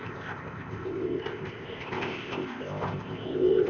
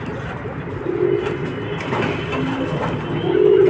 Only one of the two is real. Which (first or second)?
second